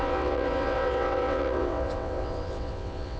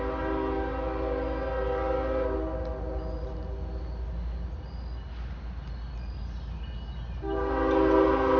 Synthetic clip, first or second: first